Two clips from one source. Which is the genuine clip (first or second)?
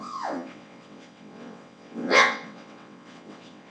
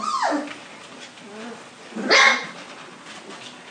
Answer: second